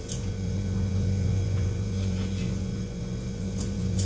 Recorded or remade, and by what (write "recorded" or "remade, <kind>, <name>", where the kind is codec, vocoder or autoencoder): remade, vocoder, Vocos